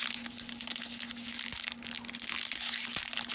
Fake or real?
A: real